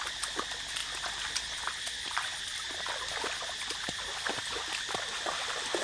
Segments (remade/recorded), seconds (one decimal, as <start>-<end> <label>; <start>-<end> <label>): 0.0-5.8 recorded